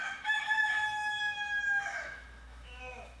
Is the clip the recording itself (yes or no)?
no